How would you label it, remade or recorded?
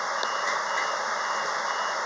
recorded